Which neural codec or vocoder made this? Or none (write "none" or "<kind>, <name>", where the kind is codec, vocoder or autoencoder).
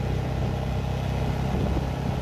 none